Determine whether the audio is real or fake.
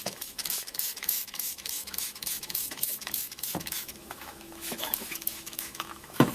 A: fake